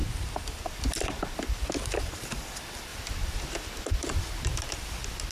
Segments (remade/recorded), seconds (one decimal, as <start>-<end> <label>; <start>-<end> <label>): 0.0-2.9 remade; 2.9-5.3 recorded